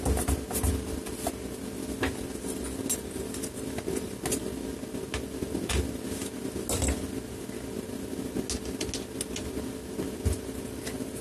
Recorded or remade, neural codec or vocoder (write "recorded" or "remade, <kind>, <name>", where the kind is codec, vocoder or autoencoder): recorded